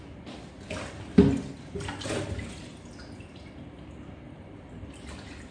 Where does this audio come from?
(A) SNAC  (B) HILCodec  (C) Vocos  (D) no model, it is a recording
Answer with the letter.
D